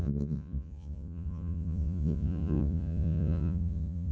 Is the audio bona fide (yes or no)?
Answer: no